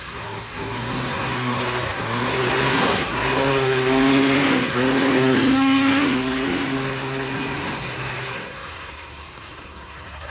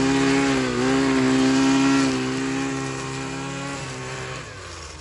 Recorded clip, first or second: second